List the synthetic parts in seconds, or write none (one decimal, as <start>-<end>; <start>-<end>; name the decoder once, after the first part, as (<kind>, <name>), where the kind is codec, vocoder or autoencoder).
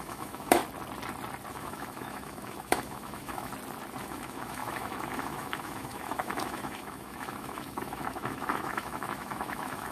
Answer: 0.0-0.6 (autoencoder, DAC-VAE); 1.5-3.5; 4.0-9.9